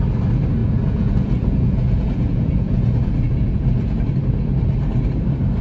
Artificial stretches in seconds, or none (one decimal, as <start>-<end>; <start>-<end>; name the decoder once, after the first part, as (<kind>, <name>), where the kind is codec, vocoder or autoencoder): 0.6-4.0 (vocoder, Vocos)